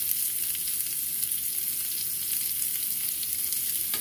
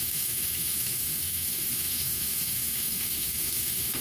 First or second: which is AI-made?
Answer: second